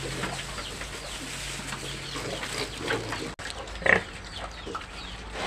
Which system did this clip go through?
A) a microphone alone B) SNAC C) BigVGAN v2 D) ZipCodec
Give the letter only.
A